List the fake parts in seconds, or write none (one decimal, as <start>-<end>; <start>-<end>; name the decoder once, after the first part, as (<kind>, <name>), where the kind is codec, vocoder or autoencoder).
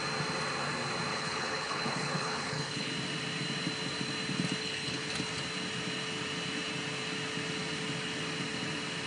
1.1-2.9 (codec, HILCodec); 4.6-5.1